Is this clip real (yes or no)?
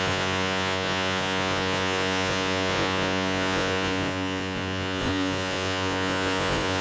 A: no